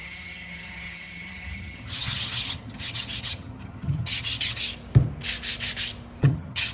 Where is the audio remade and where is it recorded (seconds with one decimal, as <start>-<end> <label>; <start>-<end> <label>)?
0.0-4.6 remade; 4.6-6.2 recorded; 6.2-6.7 remade